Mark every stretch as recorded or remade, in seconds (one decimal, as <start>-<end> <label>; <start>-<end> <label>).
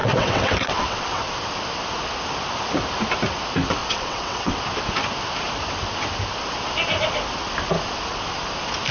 0.0-1.3 remade; 1.3-3.8 recorded; 3.8-4.6 remade; 4.6-8.9 recorded